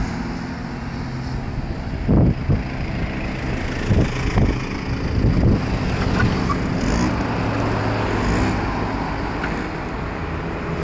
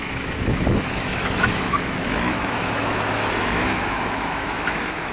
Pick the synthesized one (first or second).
second